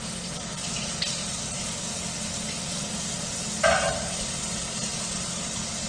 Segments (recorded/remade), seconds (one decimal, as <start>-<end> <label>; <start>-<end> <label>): 0.0-5.9 recorded